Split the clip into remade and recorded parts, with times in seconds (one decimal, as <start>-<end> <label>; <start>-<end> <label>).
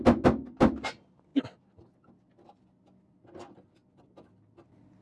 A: 0.0-5.0 recorded